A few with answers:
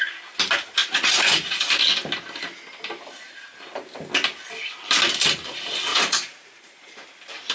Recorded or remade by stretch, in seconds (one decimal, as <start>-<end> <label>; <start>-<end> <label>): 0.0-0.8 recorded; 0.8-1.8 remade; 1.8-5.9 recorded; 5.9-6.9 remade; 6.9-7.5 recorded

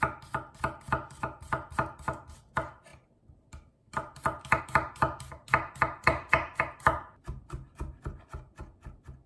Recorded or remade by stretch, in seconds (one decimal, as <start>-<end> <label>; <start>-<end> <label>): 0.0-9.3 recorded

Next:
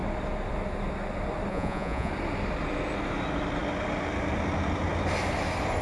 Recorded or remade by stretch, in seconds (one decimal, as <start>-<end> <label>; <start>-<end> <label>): 0.0-1.5 recorded; 1.5-2.1 remade; 2.1-5.8 recorded

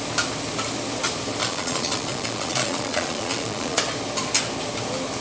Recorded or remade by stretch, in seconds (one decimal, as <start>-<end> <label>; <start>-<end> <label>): 0.0-1.4 recorded; 1.4-3.8 remade; 3.8-5.2 recorded

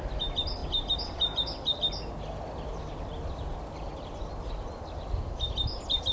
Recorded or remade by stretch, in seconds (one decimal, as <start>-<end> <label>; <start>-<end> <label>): 0.0-6.1 recorded